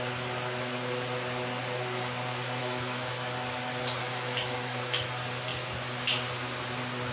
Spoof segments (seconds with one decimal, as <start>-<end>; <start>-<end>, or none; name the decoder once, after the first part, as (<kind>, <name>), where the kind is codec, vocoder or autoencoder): 2.6-3.1 (autoencoder, DAC-VAE); 4.0-5.1